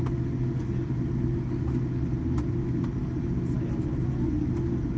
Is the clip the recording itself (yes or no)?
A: yes